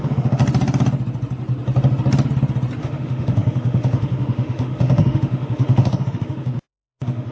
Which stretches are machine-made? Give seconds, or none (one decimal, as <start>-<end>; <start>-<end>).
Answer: 0.0-0.4; 2.8-7.3